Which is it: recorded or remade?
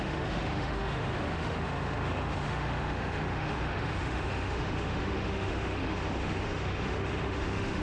remade